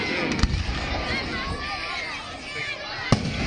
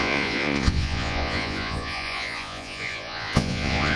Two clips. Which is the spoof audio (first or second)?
second